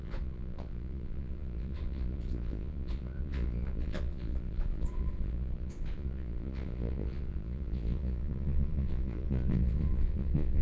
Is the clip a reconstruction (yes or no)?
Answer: yes